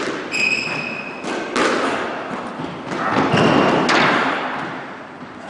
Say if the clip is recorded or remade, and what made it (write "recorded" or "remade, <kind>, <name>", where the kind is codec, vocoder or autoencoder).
recorded